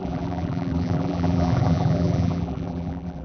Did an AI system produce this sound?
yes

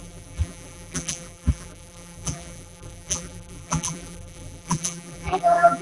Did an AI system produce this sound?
yes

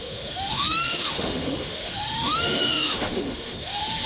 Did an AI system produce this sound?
yes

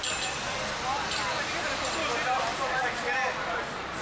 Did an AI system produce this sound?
no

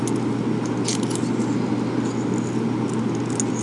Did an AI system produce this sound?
no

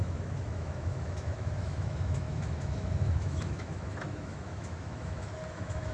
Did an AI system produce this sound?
yes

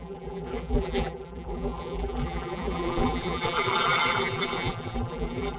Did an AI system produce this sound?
yes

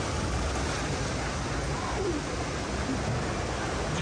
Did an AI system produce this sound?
no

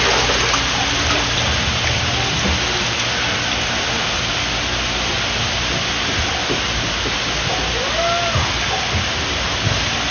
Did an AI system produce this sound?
no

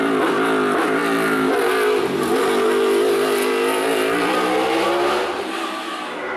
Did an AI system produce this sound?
no